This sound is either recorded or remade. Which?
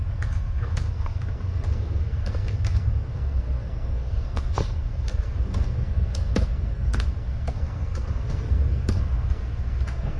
remade